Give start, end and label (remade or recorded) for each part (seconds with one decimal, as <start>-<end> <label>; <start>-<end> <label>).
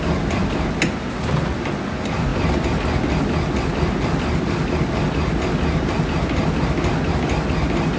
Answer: 0.0-8.0 recorded